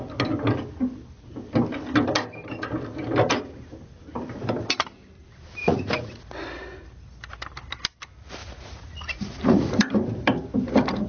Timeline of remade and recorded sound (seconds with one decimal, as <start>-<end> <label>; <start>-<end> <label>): 0.0-5.6 recorded; 5.6-6.2 remade; 6.2-8.4 recorded; 8.4-9.8 remade; 9.8-11.1 recorded